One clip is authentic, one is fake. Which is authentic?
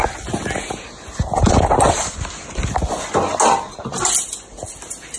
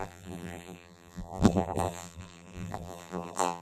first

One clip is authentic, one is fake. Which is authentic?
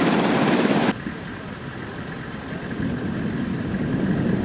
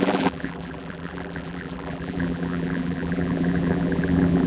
first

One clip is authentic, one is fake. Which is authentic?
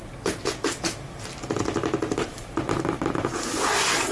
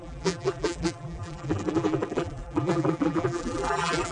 first